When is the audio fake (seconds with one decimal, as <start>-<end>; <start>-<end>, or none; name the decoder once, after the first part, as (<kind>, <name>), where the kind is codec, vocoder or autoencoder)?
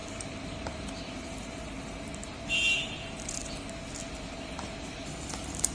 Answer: none